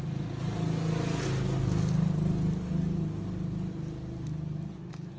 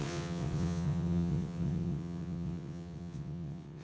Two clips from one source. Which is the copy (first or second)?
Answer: second